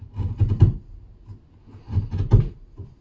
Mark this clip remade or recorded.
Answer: recorded